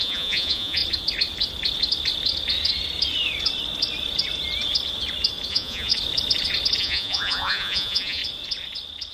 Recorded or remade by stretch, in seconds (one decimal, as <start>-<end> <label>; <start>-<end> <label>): 0.0-0.8 remade; 0.8-5.5 recorded; 5.5-5.9 remade; 5.9-6.8 recorded; 6.8-8.2 remade; 8.2-9.1 recorded